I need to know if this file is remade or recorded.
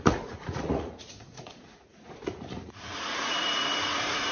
remade